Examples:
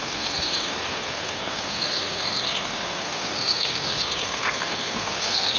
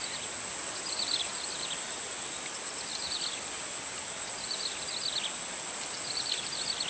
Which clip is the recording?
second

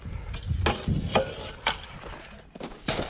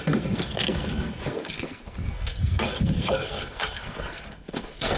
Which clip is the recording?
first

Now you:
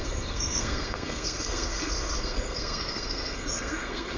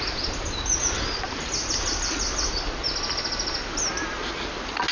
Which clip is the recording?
second